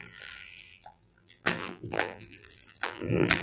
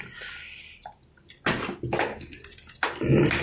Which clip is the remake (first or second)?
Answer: first